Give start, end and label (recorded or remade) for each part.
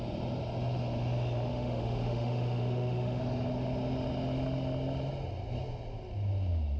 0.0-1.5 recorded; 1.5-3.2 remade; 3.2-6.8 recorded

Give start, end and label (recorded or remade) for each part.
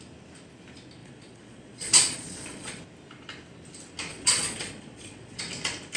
0.0-1.0 recorded; 1.0-2.8 remade; 2.8-4.1 recorded; 4.1-5.4 remade; 5.4-6.0 recorded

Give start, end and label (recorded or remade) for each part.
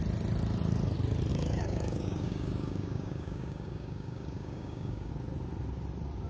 0.0-1.3 recorded; 1.3-5.1 remade; 5.1-6.3 recorded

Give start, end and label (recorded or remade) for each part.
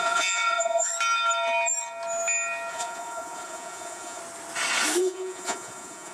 0.0-0.9 remade; 0.9-2.7 recorded; 2.7-4.2 remade; 4.2-5.0 recorded; 5.0-6.1 remade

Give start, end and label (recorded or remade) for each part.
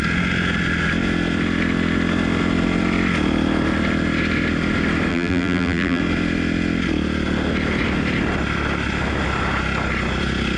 0.0-5.1 recorded; 5.1-6.0 remade; 6.0-10.6 recorded